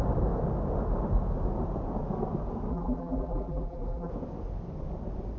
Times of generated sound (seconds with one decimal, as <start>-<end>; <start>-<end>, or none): 2.7-4.1